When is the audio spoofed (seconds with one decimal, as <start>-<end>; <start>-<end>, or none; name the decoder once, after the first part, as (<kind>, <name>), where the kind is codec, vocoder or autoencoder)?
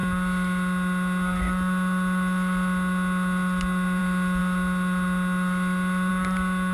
none